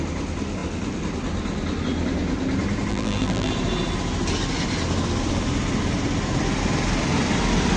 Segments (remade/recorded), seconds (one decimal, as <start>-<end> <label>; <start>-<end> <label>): 0.0-2.9 recorded; 2.9-3.5 remade; 3.5-7.8 recorded